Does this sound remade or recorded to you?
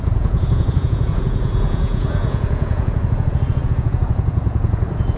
remade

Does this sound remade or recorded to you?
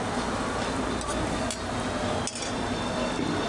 recorded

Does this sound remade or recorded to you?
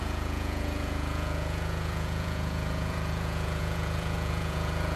remade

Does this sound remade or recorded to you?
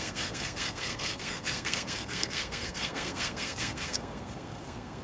remade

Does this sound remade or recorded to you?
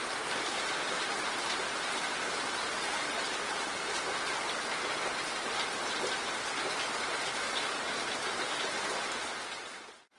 recorded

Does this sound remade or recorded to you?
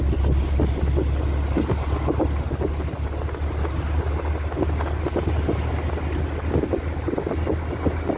recorded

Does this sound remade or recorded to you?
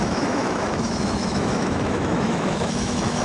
remade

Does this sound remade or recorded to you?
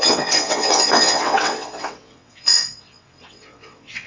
remade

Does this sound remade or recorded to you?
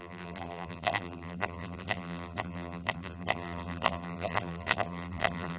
remade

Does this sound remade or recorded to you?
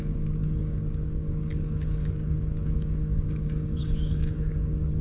remade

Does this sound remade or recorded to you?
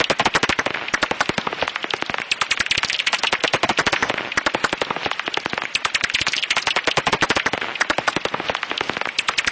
recorded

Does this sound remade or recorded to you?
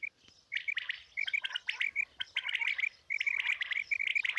recorded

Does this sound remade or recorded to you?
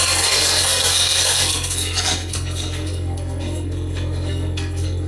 remade